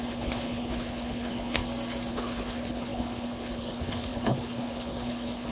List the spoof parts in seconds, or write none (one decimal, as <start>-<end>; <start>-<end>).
0.0-1.6; 2.1-5.5